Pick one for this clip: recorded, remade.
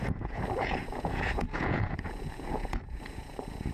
remade